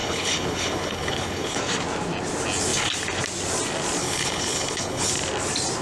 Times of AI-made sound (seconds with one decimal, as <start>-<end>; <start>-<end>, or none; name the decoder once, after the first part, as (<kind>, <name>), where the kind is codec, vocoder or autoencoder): 0.0-1.6 (codec, HILCodec); 4.0-5.1